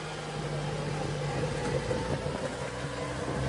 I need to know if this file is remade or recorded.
recorded